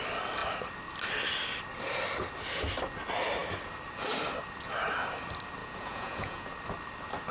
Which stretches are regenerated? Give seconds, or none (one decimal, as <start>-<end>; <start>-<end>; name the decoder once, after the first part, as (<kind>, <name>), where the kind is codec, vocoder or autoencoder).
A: 5.6-6.5 (vocoder, Vocos)